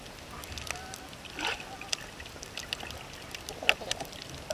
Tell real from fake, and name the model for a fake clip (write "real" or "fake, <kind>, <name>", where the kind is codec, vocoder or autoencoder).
real